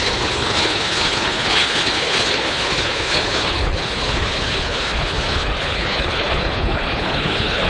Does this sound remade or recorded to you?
remade